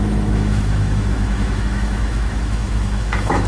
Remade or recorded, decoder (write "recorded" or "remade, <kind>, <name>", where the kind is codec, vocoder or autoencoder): remade, autoencoder, DAC-VAE